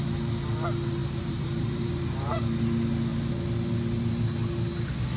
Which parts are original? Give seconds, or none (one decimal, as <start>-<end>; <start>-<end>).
0.0-1.0; 2.4-5.2